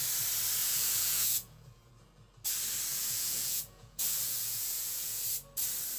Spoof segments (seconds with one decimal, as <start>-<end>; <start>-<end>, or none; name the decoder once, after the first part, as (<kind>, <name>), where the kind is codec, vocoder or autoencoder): 0.6-1.9 (vocoder, Vocos); 2.9-5.2